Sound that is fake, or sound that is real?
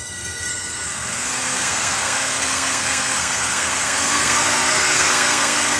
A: fake